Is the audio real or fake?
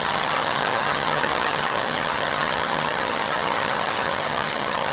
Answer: fake